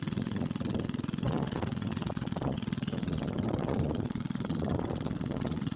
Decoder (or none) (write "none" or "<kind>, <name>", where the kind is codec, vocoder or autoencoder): vocoder, Vocos